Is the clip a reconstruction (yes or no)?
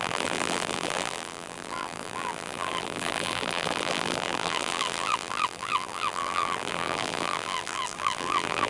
yes